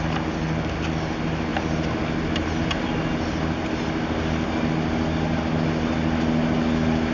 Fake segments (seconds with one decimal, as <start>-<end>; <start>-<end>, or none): none